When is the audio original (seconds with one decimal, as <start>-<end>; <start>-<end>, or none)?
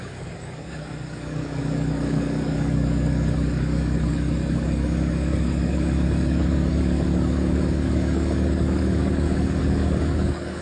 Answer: none